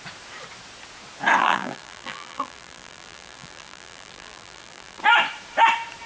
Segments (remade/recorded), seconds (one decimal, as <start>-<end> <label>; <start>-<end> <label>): 0.0-1.4 recorded; 1.4-5.0 remade; 5.0-6.1 recorded